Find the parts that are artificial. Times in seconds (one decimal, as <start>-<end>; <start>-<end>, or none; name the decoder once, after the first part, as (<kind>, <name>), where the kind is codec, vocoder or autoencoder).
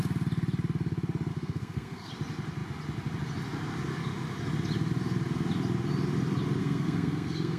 1.3-2.1 (codec, SNAC); 6.6-7.6